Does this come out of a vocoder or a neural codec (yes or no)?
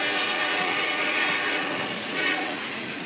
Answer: yes